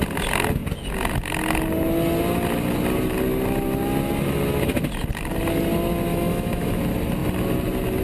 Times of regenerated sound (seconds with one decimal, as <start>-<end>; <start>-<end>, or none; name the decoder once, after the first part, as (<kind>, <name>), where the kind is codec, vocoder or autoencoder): 6.1-6.8 (autoencoder, DAC-VAE)